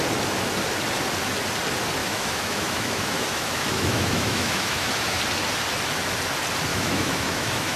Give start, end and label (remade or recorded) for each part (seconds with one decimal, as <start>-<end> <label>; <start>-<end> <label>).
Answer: 0.0-2.0 recorded; 2.0-5.2 remade; 5.2-6.7 recorded; 6.7-7.8 remade